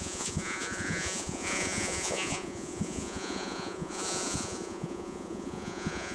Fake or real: fake